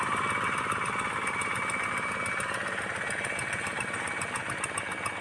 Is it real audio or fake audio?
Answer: real